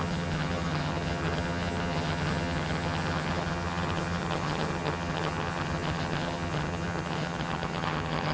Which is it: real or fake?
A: fake